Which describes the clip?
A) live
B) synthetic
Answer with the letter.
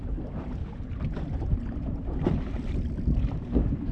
B